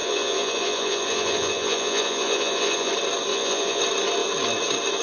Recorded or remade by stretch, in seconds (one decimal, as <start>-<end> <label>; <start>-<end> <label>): 0.0-2.9 remade; 2.9-3.3 recorded; 3.3-3.8 remade; 3.8-5.0 recorded